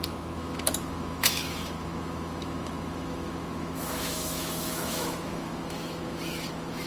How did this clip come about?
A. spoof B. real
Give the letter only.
A